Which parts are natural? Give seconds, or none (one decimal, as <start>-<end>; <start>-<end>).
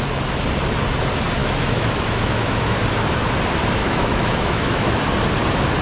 0.0-1.4; 2.8-3.8; 5.0-5.8